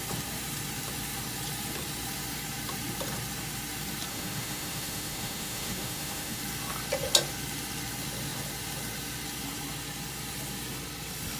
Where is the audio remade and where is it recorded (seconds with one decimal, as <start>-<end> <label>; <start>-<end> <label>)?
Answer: 0.0-4.1 recorded; 4.1-6.4 remade; 6.4-11.4 recorded